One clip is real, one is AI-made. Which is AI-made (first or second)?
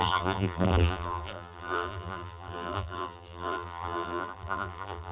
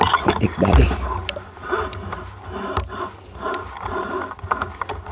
first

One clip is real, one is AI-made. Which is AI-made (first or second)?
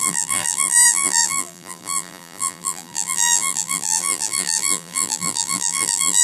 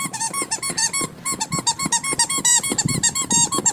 first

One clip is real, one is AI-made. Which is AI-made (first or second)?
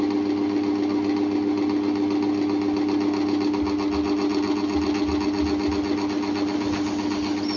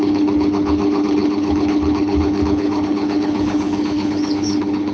second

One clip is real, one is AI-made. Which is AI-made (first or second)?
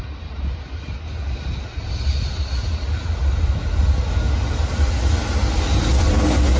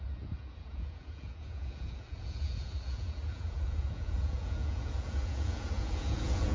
second